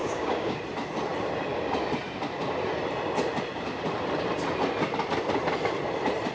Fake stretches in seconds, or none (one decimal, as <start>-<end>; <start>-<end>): 0.0-0.6